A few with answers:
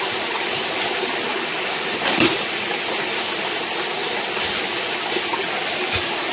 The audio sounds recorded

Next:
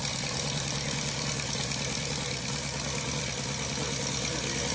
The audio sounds recorded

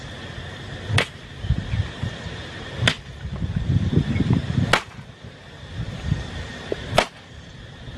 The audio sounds recorded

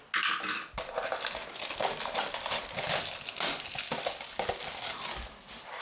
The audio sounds recorded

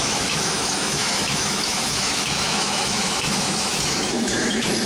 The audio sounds remade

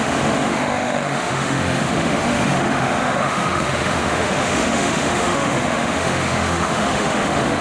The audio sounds remade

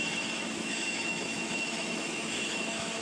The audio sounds remade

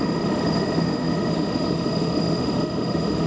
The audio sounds remade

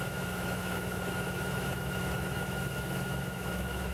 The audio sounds remade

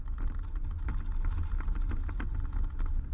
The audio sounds recorded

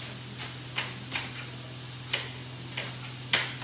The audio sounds recorded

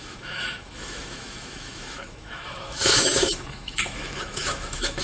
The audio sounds remade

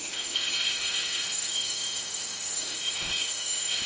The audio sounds remade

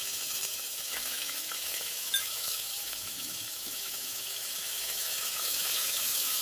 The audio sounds remade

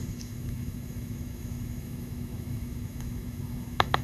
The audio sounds remade